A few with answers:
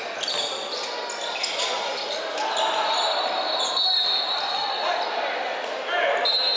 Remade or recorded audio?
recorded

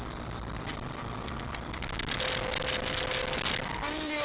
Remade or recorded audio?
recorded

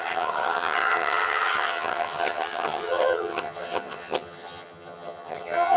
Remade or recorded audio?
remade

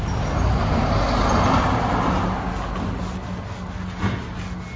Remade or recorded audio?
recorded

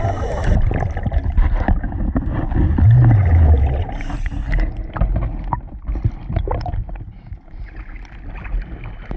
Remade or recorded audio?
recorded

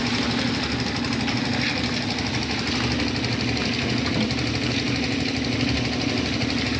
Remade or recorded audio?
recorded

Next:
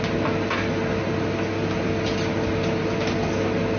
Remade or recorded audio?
recorded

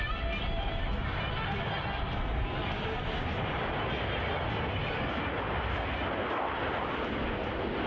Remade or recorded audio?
recorded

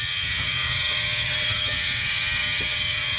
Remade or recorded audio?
remade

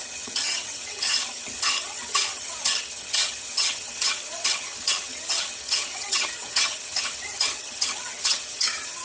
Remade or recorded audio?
remade